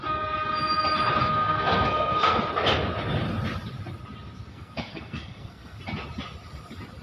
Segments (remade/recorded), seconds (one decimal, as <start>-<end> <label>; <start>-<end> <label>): 0.0-1.2 recorded; 1.2-2.4 remade; 2.4-4.5 recorded; 4.5-5.8 remade; 5.8-7.0 recorded